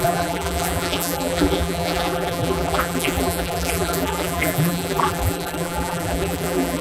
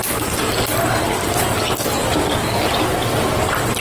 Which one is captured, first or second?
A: second